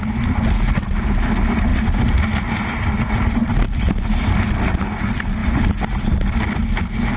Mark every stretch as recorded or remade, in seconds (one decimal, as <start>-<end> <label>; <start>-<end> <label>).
0.0-7.2 recorded